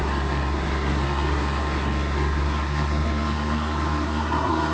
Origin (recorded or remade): remade